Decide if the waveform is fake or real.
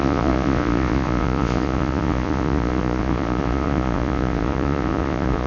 fake